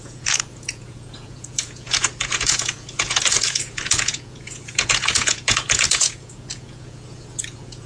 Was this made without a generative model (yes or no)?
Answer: no